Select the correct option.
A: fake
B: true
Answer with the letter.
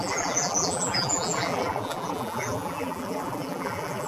A